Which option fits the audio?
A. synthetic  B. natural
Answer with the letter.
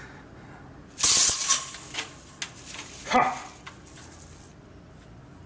B